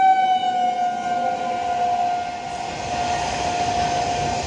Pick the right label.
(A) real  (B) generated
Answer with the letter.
A